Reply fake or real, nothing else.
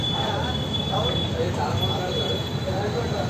real